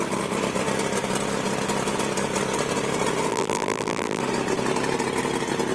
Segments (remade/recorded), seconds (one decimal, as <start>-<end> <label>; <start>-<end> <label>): 0.0-3.3 recorded; 3.3-4.2 remade; 4.2-5.7 recorded

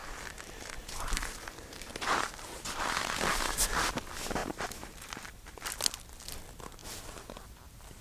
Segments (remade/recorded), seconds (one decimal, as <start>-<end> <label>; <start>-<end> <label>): 0.0-2.3 remade; 2.3-4.4 recorded; 4.4-5.6 remade; 5.6-8.0 recorded

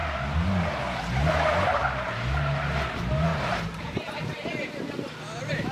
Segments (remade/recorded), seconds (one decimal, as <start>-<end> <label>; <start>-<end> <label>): 0.0-3.3 recorded; 3.3-4.0 remade; 4.0-5.7 recorded

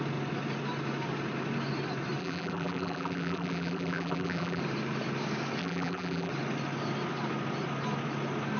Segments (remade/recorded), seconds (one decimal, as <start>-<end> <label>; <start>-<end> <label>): 0.0-2.2 recorded; 2.2-4.6 remade; 4.6-5.6 recorded; 5.6-6.3 remade; 6.3-8.6 recorded

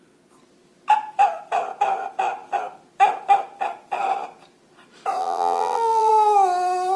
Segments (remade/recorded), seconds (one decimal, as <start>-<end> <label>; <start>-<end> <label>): 0.0-5.2 recorded; 5.2-6.1 remade; 6.1-7.0 recorded

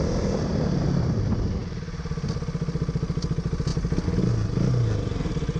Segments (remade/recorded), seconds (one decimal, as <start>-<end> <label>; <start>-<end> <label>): 0.0-5.6 recorded

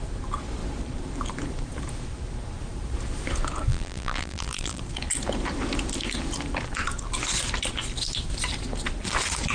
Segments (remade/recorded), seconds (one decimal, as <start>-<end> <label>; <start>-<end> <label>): 0.0-3.7 recorded; 3.7-4.8 remade; 4.8-9.5 recorded